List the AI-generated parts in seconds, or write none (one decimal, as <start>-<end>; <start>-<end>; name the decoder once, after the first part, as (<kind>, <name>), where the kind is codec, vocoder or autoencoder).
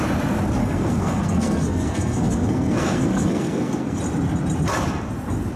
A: 0.6-4.0 (codec, SNAC)